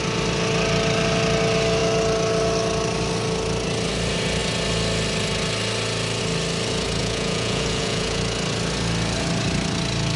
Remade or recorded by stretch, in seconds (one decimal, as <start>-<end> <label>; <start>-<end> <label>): 0.0-7.0 recorded; 7.0-8.2 remade; 8.2-10.2 recorded